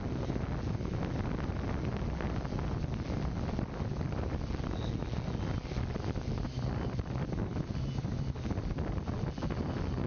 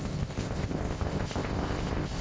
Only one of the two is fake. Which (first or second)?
second